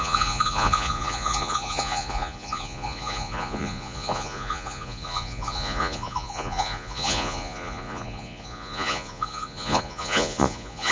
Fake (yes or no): yes